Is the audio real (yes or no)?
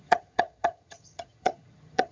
no